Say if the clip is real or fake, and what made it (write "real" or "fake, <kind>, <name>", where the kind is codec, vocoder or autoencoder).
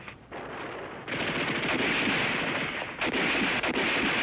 real